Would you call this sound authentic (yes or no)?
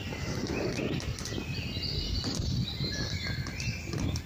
yes